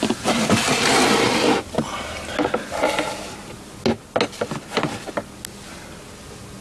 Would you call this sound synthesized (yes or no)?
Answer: no